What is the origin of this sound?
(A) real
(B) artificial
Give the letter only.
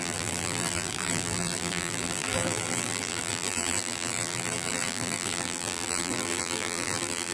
B